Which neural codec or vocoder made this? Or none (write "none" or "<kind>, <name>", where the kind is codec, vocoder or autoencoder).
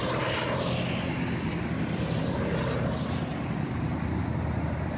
none